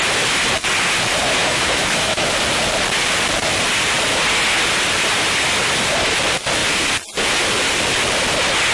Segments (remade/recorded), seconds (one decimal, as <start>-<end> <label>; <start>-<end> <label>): 0.0-1.4 recorded; 1.4-2.3 remade; 2.3-8.7 recorded